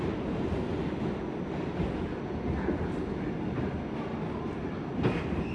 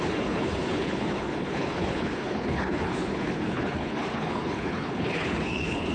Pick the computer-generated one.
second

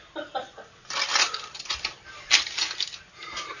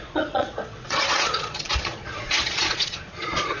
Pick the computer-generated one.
second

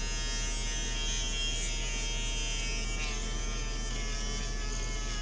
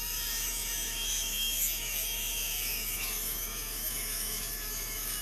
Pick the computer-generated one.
second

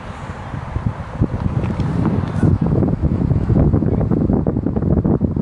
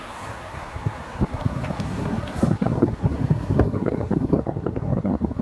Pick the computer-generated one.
second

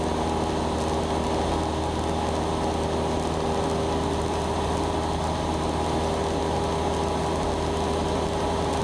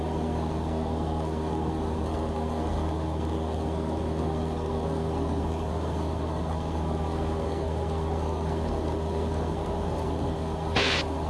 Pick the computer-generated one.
second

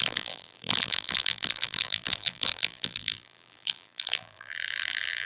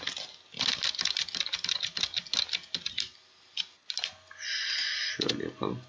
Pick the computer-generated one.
first